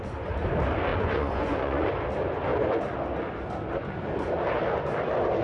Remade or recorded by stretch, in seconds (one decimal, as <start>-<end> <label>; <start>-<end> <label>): 0.0-0.9 recorded; 0.9-1.9 remade; 1.9-5.4 recorded